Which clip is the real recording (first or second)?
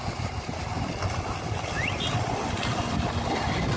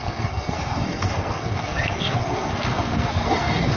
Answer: first